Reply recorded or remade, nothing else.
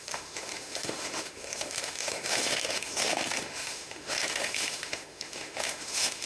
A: remade